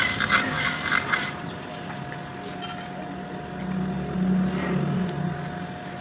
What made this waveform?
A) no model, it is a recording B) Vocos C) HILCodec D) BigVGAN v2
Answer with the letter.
A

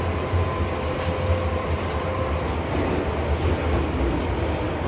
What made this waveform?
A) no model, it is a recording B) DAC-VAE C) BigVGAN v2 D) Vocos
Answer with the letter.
A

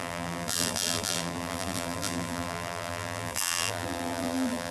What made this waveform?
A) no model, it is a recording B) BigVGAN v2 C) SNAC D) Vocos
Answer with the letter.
B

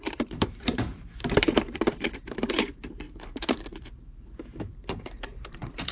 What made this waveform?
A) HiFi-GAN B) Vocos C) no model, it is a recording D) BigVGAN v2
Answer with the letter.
D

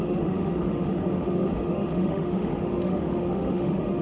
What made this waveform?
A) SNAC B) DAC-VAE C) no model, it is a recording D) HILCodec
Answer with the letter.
B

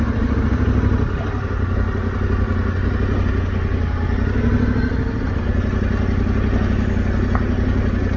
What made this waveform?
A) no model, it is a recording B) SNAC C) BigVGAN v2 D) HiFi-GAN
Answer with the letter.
A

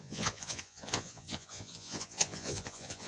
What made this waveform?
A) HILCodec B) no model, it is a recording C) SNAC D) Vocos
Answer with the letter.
D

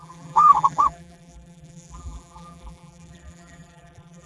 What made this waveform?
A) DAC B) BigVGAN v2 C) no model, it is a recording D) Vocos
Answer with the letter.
B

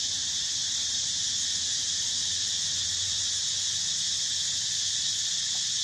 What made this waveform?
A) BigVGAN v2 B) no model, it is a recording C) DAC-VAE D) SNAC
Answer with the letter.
B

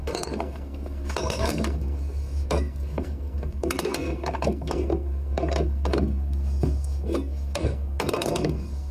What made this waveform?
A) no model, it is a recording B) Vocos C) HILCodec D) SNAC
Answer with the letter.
D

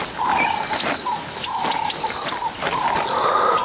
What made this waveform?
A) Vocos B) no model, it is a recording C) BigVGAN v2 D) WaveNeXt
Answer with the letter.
B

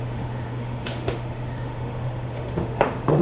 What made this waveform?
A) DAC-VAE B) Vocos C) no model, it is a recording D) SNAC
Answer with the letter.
A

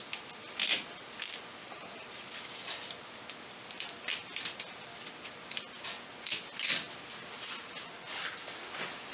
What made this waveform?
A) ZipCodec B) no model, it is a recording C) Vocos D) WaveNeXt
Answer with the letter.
B